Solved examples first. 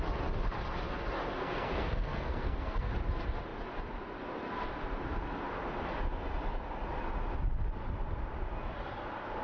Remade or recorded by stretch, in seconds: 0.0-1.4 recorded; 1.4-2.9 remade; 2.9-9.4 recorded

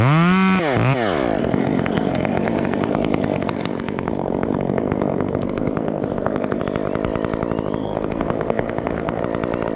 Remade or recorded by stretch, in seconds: 0.0-1.4 recorded; 1.4-6.6 remade; 6.6-7.8 recorded; 7.8-9.2 remade; 9.2-9.8 recorded

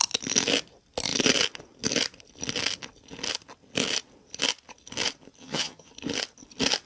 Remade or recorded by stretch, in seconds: 0.0-5.4 recorded; 5.4-5.9 remade; 5.9-6.9 recorded

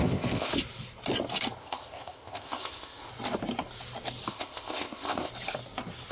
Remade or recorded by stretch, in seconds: 0.0-0.5 remade; 0.5-1.6 recorded; 1.6-3.1 remade; 3.1-4.3 recorded; 4.3-5.3 remade; 5.3-6.1 recorded

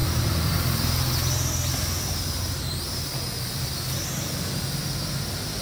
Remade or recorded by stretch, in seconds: 0.0-5.6 recorded

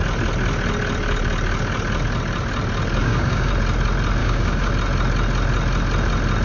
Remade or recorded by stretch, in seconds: 0.0-3.0 recorded; 3.0-3.5 remade; 3.5-4.2 recorded; 4.2-4.7 remade; 4.7-6.4 recorded

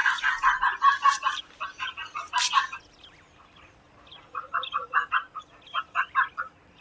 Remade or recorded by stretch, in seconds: 0.0-6.8 recorded

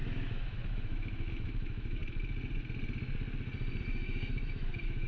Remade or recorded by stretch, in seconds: 0.0-2.0 remade; 2.0-3.8 recorded; 3.8-5.1 remade